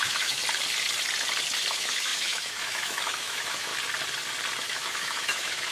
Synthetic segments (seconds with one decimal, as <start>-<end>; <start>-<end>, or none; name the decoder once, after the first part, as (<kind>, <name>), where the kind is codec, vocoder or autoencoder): 0.0-0.4 (autoencoder, DAC-VAE); 1.7-3.7; 4.6-5.7